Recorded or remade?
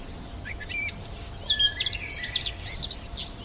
recorded